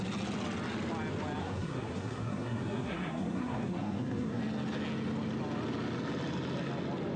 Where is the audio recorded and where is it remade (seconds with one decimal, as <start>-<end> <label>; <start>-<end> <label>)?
0.0-1.4 recorded; 1.4-4.4 remade; 4.4-7.2 recorded